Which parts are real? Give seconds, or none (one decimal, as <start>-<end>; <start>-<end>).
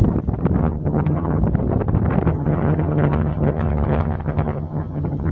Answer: 0.0-0.6; 1.4-2.3